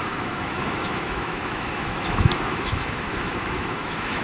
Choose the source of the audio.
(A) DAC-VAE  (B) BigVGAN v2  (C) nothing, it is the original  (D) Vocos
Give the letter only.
A